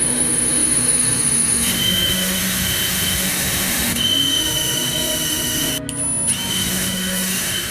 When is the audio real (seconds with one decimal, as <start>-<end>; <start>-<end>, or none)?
5.7-6.5